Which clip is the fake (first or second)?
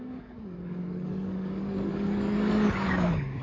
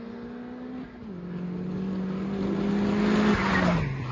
first